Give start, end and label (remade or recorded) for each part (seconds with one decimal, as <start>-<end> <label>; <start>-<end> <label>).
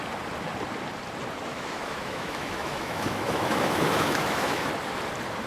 0.0-1.5 recorded; 1.5-4.7 remade; 4.7-5.5 recorded